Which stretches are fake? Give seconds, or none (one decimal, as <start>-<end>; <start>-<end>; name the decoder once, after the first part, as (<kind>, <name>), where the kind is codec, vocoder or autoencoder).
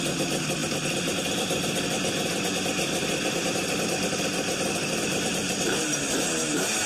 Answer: none